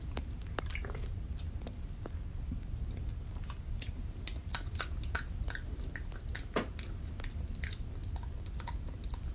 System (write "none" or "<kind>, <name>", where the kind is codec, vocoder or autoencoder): none